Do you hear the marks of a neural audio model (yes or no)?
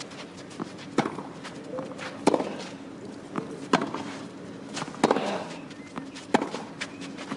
no